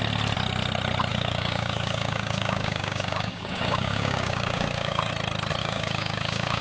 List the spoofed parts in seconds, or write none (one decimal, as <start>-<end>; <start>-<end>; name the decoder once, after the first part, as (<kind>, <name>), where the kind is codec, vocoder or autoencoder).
1.1-5.1 (codec, DAC); 5.6-6.6